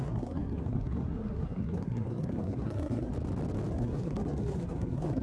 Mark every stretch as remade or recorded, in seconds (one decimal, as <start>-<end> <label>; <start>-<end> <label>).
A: 0.0-3.1 remade; 3.1-3.7 recorded; 3.7-5.2 remade